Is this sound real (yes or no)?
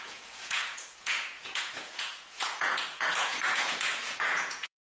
no